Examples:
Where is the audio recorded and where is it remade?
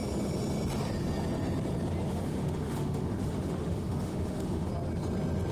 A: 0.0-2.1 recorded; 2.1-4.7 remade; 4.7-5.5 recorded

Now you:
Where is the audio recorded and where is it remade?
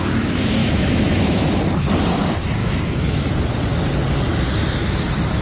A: 0.0-0.6 recorded; 0.6-1.4 remade; 1.4-2.6 recorded; 2.6-3.3 remade; 3.3-5.4 recorded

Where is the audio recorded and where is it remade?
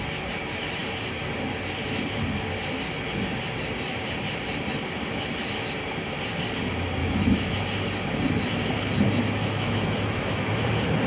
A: 0.0-7.0 recorded; 7.0-7.5 remade; 7.5-9.4 recorded; 9.4-10.5 remade; 10.5-11.1 recorded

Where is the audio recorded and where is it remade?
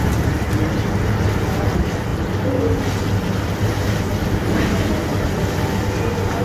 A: 0.0-6.4 recorded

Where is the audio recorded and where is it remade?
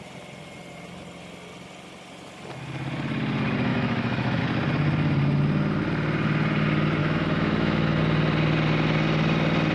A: 0.0-3.7 recorded; 3.7-4.4 remade; 4.4-7.0 recorded; 7.0-8.0 remade; 8.0-9.7 recorded